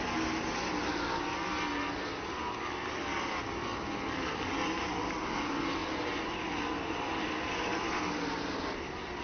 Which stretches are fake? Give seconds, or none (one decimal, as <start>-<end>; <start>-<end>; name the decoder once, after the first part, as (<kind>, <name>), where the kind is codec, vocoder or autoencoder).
none